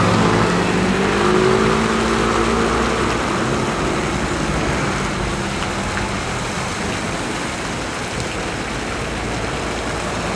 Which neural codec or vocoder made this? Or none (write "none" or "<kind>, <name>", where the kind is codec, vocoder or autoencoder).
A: none